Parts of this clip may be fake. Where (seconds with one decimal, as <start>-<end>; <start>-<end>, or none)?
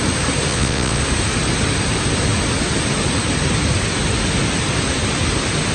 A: 0.5-1.0